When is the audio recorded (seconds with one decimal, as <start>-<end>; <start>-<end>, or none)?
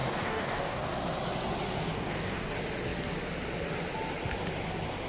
0.9-1.9; 2.5-5.1